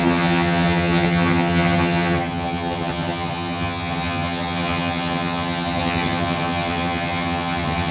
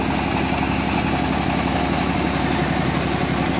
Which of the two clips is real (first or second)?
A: second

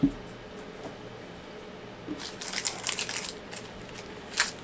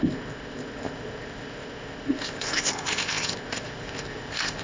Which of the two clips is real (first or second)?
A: first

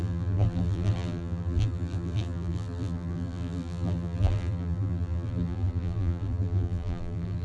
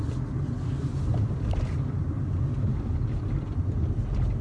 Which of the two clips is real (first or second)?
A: second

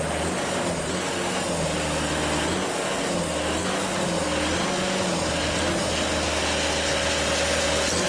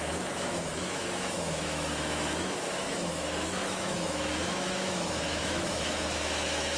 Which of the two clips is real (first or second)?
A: first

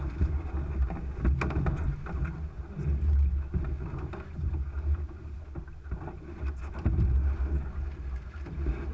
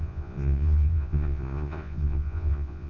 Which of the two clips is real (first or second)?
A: first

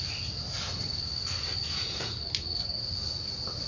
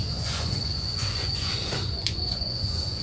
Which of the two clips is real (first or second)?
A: first